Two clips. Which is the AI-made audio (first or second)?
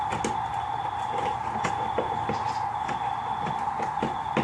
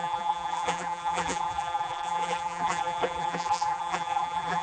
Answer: second